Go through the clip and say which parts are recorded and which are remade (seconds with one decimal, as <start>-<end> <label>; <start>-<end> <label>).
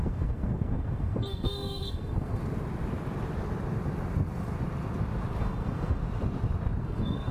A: 0.0-2.4 remade; 2.4-5.4 recorded; 5.4-6.0 remade; 6.0-6.8 recorded; 6.8-7.3 remade